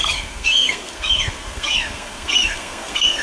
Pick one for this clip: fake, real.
fake